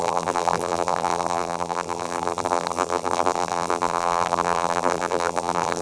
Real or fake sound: fake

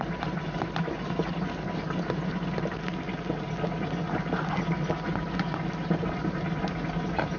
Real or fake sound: real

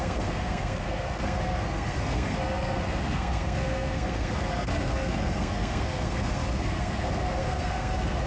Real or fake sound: fake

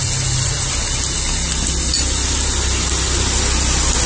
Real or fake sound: real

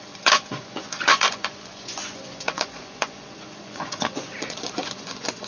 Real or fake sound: fake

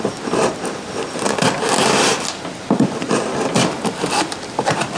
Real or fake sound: fake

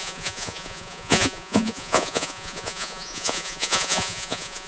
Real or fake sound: fake